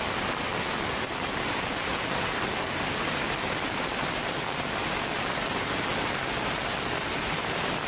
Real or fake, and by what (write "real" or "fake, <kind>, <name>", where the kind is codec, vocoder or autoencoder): real